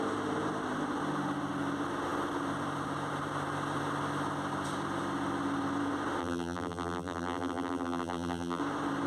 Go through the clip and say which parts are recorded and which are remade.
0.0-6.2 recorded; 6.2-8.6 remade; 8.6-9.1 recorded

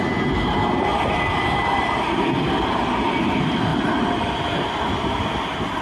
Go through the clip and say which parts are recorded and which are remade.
0.0-0.9 recorded; 0.9-2.3 remade; 2.3-3.7 recorded; 3.7-4.2 remade; 4.2-5.8 recorded

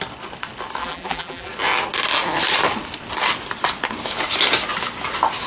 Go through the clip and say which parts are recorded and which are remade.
0.0-0.8 recorded; 0.8-1.5 remade; 1.5-5.5 recorded

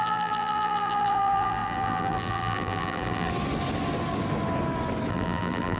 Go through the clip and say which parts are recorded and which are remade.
0.0-3.3 remade; 3.3-5.1 recorded; 5.1-5.8 remade

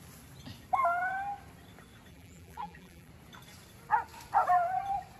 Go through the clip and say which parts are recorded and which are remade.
0.0-2.1 recorded; 2.1-3.1 remade; 3.1-5.2 recorded

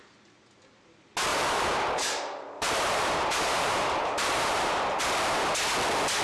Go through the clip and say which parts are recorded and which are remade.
0.0-1.3 recorded; 1.3-5.0 remade; 5.0-6.2 recorded

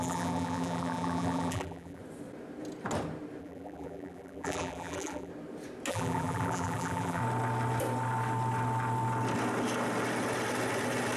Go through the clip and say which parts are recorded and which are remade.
0.0-2.0 remade; 2.0-3.4 recorded; 3.4-5.3 remade; 5.3-5.9 recorded; 5.9-7.2 remade; 7.2-11.2 recorded